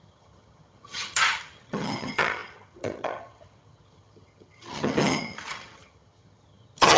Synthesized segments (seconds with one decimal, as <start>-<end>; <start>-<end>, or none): 0.0-7.0